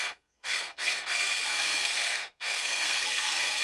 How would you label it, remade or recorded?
remade